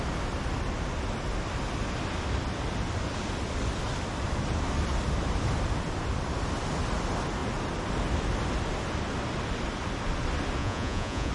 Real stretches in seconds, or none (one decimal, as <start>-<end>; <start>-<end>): 0.0-10.6